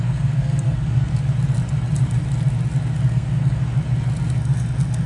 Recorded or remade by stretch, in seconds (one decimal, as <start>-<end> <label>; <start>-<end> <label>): 0.0-1.1 remade; 1.1-3.1 recorded; 3.1-3.6 remade; 3.6-5.1 recorded

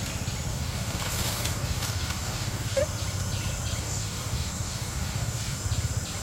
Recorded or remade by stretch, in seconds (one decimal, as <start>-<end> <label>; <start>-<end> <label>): 0.0-0.5 recorded; 0.5-2.8 remade; 2.8-3.8 recorded; 3.8-5.6 remade; 5.6-6.2 recorded

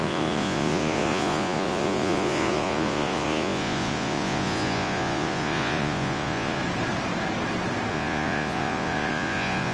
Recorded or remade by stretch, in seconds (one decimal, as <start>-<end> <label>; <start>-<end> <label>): 0.0-6.6 remade; 6.6-7.9 recorded; 7.9-9.7 remade

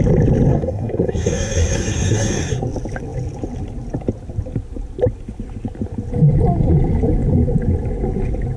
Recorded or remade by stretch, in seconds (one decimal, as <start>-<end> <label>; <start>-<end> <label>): 0.0-0.5 recorded; 0.5-2.5 remade; 2.5-8.6 recorded

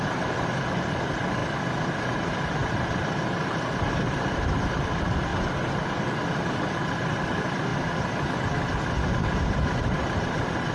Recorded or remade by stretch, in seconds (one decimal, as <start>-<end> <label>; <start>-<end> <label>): 0.0-1.4 remade; 1.4-2.0 recorded; 2.0-2.6 remade; 2.6-4.1 recorded; 4.1-5.3 remade; 5.3-7.2 recorded; 7.2-7.7 remade; 7.7-9.4 recorded; 9.4-10.7 remade

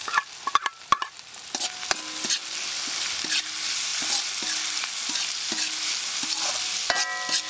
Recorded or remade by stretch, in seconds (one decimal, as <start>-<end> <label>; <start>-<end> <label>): 0.0-7.5 recorded

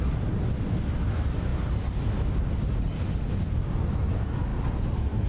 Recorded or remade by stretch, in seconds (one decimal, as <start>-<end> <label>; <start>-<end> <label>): 0.0-1.5 recorded; 1.5-3.3 remade; 3.3-5.3 recorded